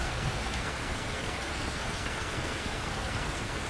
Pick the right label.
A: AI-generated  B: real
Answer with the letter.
A